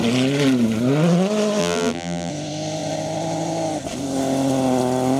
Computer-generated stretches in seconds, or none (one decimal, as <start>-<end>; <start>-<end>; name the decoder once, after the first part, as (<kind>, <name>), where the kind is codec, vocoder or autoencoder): 1.6-2.3 (vocoder, BigVGAN v2)